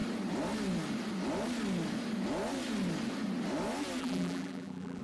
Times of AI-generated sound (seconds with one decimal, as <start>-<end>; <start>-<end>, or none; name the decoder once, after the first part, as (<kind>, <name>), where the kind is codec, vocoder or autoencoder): 4.0-5.0 (vocoder, BigVGAN v2)